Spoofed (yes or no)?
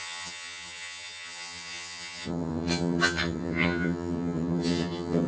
yes